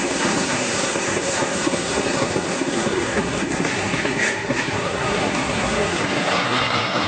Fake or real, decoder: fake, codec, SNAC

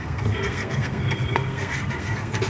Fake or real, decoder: fake, codec, SNAC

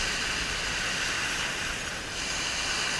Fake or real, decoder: real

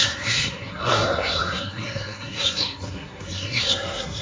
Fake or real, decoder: fake, codec, SNAC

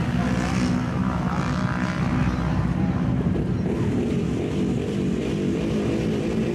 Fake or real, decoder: real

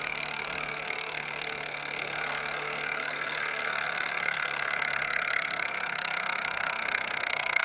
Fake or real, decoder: fake, codec, SNAC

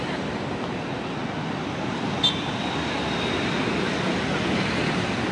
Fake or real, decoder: real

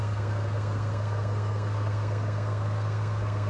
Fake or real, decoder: fake, codec, SNAC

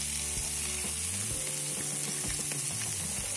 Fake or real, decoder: real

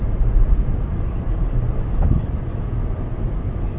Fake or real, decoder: real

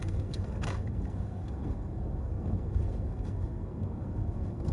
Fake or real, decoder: fake, codec, SNAC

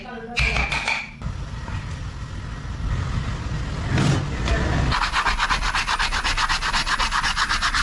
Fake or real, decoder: real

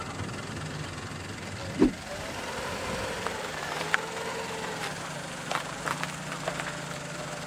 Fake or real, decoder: real